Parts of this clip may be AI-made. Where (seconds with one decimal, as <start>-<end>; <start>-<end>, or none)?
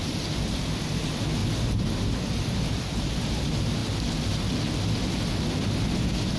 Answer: 0.0-1.4; 2.2-3.8